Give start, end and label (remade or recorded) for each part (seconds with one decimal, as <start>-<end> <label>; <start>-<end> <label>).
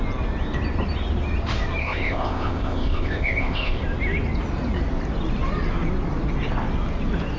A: 0.0-1.8 recorded; 1.8-3.8 remade; 3.8-7.4 recorded